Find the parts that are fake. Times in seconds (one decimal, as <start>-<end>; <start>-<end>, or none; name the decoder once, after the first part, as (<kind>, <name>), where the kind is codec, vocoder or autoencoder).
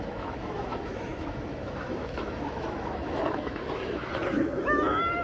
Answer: 0.0-5.2 (autoencoder, DAC-VAE)